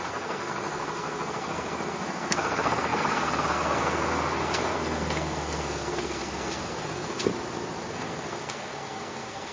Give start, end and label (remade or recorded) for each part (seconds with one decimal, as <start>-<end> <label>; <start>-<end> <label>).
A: 0.0-7.3 remade; 7.3-7.9 recorded; 7.9-9.5 remade